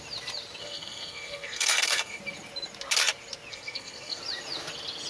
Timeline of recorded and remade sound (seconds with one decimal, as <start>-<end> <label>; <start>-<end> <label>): 0.0-0.6 recorded; 0.6-2.2 remade; 2.2-3.5 recorded; 3.5-4.2 remade; 4.2-5.1 recorded